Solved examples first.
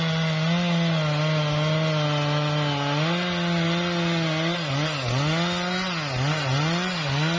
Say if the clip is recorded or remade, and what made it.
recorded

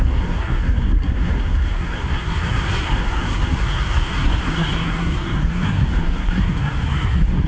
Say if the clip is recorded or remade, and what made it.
remade, codec, SNAC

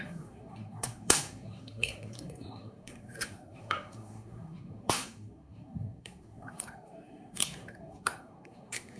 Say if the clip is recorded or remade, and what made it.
remade, codec, SNAC